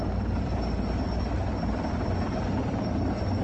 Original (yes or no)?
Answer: no